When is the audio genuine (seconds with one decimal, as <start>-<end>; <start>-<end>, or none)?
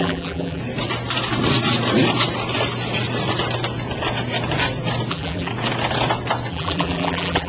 0.6-5.1; 5.5-6.5